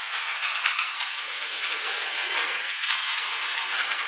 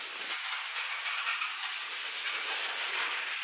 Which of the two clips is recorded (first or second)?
second